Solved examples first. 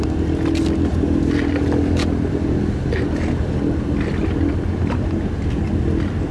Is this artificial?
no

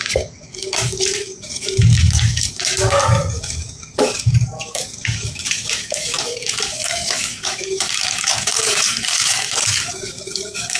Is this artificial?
yes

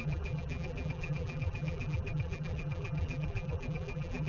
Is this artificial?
yes